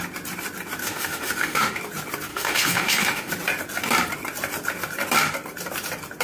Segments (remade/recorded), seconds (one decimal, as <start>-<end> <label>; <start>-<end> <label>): 0.0-0.8 recorded; 0.8-1.8 remade; 1.8-2.3 recorded; 2.3-3.3 remade; 3.3-6.2 recorded